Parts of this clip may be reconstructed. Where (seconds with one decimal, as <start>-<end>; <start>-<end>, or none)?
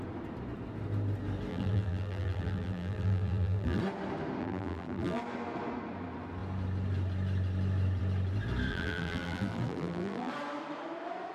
1.5-3.8; 4.4-5.2; 8.7-10.3